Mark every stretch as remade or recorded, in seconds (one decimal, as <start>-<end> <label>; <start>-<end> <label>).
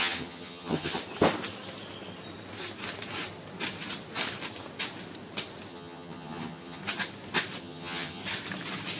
0.0-1.0 remade; 1.0-5.7 recorded; 5.7-6.8 remade; 6.8-7.6 recorded; 7.6-8.2 remade; 8.2-9.0 recorded